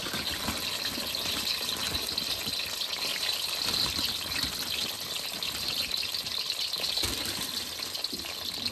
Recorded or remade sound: recorded